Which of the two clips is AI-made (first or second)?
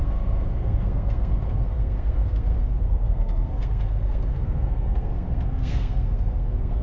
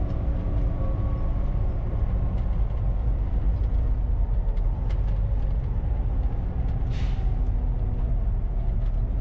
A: first